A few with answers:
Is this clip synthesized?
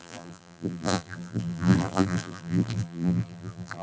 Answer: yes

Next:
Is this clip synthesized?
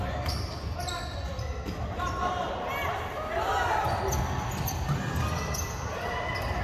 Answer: no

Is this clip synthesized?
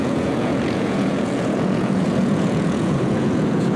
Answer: yes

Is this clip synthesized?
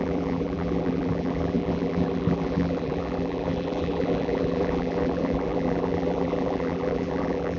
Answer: yes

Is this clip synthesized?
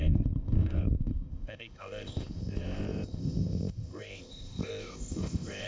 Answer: yes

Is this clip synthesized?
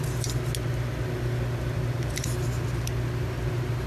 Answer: no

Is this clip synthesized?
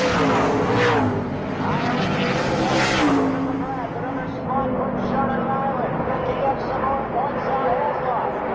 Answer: no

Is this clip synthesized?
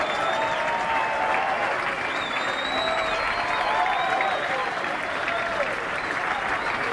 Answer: no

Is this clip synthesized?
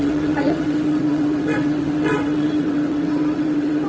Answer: yes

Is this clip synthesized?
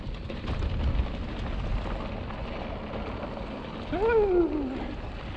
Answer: no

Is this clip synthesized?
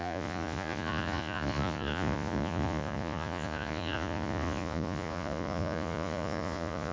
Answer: yes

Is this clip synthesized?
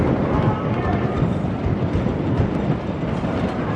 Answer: no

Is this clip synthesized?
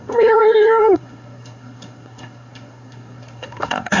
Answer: yes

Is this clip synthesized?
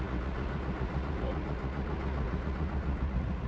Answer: yes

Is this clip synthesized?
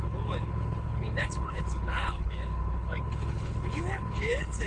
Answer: yes